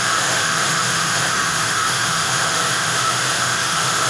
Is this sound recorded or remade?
remade